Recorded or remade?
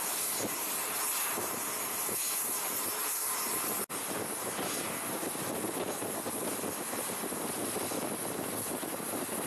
recorded